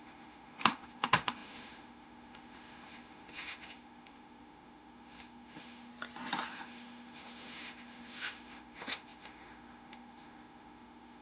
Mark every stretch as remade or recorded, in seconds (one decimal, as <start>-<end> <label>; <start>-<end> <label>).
0.0-5.9 remade; 5.9-6.5 recorded; 6.5-11.2 remade